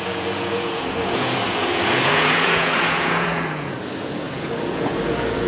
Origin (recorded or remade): remade